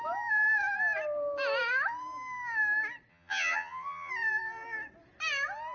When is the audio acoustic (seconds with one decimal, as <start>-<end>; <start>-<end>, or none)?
0.0-3.1; 4.1-5.7